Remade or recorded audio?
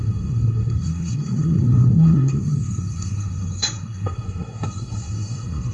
remade